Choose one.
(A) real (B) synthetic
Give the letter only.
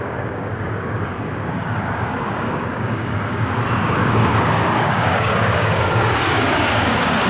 B